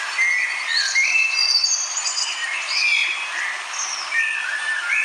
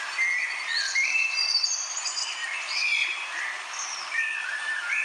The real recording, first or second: first